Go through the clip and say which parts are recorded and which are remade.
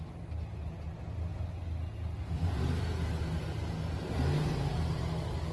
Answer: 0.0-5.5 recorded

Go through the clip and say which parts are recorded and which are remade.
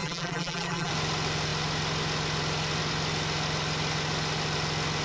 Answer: 0.0-0.9 remade; 0.9-5.0 recorded